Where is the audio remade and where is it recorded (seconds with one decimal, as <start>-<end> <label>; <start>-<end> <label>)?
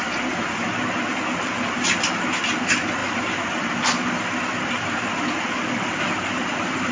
0.0-6.9 recorded